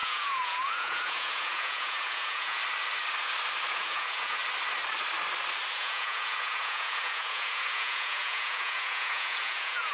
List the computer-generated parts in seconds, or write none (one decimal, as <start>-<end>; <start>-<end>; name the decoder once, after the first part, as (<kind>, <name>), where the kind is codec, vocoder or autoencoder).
0.0-2.6 (vocoder, Vocos); 3.7-4.4; 5.7-9.9